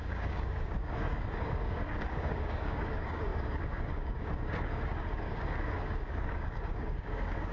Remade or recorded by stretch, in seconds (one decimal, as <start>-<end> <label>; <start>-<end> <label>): 0.0-7.5 remade